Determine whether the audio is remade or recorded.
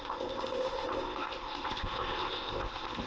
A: remade